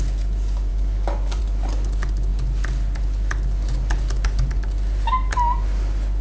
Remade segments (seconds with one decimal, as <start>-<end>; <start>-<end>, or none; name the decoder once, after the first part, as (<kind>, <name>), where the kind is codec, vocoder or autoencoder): 0.7-1.4 (codec, DAC)